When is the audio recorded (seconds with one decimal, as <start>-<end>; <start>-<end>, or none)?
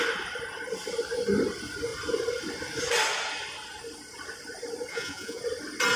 0.0-4.9; 5.4-6.0